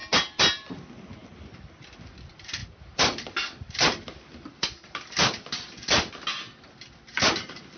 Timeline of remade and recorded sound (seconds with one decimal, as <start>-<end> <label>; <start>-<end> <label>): 0.0-2.6 recorded; 2.6-6.1 remade; 6.1-7.8 recorded